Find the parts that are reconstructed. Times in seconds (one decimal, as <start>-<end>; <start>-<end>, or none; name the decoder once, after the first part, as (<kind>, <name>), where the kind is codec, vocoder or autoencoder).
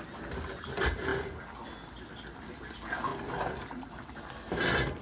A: none